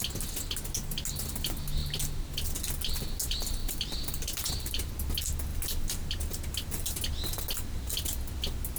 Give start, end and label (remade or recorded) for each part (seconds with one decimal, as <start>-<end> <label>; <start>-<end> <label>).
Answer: 0.0-3.6 recorded; 3.6-4.9 remade; 4.9-8.8 recorded